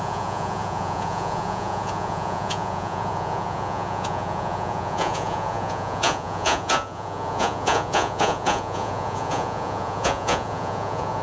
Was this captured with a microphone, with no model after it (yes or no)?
no